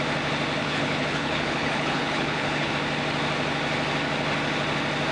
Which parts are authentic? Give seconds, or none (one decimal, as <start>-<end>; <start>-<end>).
0.0-0.6; 2.7-5.1